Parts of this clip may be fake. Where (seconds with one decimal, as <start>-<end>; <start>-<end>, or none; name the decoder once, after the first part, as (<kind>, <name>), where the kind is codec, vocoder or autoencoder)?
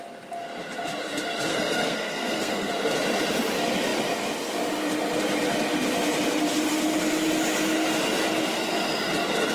1.5-2.7 (codec, SNAC)